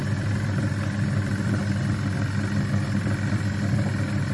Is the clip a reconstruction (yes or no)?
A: no